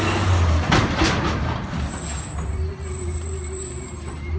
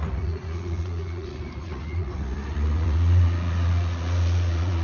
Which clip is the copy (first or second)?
second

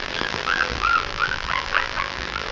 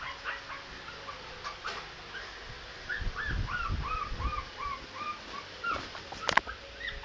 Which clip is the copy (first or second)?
first